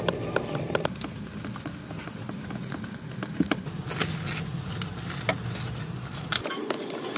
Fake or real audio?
real